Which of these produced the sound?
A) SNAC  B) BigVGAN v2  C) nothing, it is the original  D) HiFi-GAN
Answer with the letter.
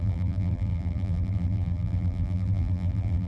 B